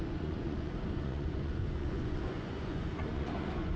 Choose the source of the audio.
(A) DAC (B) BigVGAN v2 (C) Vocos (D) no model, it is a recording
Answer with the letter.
C